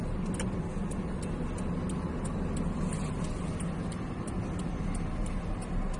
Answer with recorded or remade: recorded